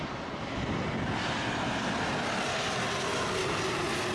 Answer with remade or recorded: recorded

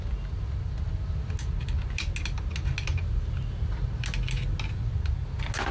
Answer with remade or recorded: recorded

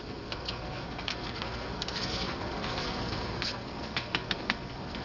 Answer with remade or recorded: remade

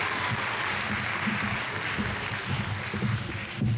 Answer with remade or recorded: recorded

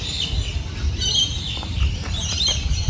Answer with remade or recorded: remade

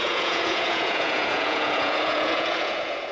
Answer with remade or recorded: remade